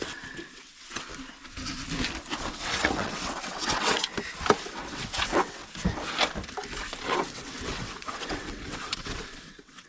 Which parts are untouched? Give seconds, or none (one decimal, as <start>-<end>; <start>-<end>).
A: 1.1-2.5; 4.1-4.6; 5.6-7.0